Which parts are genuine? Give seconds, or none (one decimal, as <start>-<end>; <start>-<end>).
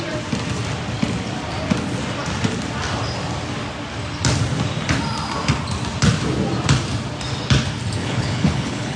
0.0-8.0